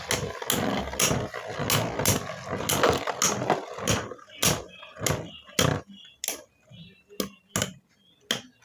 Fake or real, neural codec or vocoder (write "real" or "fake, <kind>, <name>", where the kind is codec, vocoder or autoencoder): real